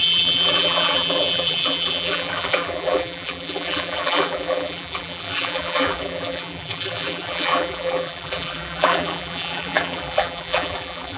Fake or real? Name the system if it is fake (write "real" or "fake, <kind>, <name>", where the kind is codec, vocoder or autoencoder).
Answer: fake, vocoder, BigVGAN v2